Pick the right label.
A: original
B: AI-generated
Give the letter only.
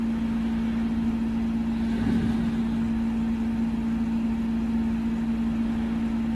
A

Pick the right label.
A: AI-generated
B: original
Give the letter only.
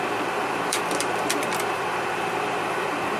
A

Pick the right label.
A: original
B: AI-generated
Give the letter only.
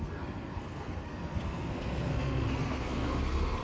B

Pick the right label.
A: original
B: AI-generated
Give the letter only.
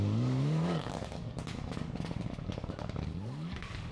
B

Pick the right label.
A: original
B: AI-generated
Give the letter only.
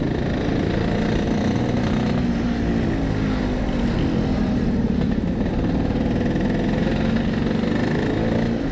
A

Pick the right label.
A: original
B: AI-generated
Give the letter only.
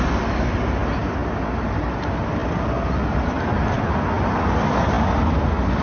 A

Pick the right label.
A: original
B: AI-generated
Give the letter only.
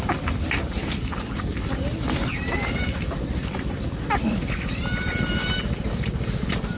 B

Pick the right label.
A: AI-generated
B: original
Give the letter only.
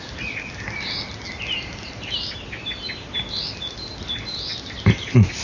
B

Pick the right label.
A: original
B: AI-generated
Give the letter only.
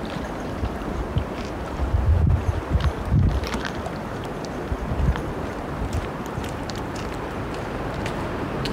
B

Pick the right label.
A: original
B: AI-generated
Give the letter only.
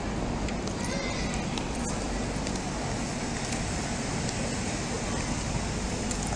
A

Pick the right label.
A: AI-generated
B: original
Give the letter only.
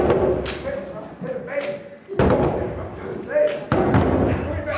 B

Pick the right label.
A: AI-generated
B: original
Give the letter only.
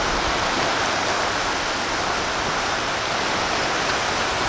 B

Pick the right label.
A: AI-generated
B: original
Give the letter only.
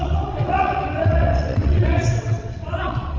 A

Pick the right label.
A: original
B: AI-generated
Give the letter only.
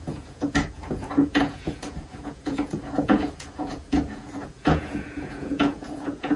B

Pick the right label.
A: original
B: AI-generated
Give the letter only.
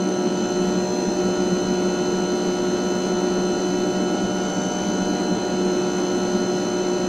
A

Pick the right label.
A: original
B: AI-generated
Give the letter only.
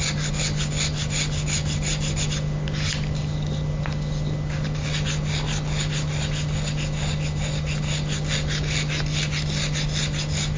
A